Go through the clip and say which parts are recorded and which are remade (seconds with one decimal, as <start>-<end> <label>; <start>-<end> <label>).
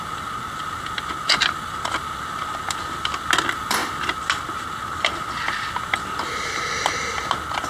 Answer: 0.0-7.7 recorded